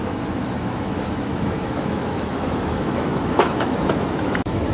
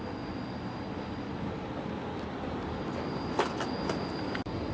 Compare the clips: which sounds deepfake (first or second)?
first